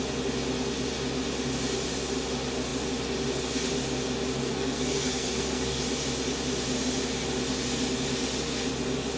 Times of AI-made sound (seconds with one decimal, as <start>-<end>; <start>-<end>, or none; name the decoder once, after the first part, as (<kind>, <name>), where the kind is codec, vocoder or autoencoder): 4.4-5.8 (codec, SNAC)